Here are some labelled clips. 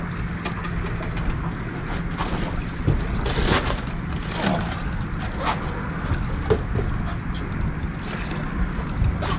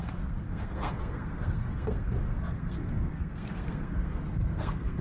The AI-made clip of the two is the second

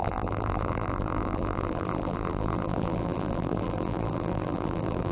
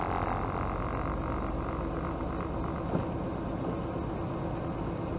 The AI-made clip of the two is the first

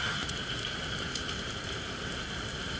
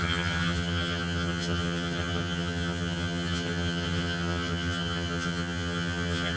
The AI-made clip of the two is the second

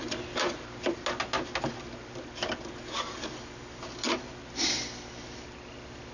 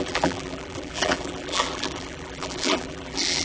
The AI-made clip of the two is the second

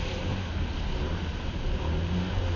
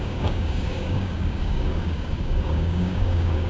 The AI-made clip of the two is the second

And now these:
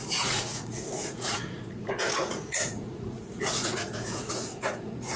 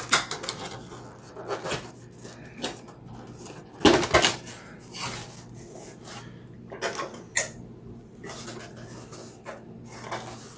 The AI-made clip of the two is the first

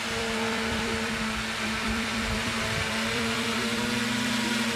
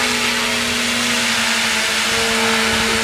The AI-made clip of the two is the first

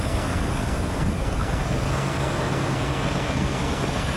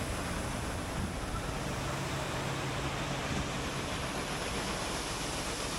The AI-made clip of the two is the first